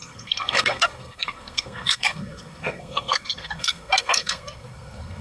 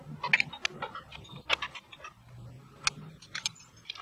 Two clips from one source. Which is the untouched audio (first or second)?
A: second